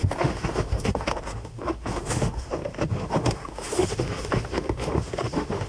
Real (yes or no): no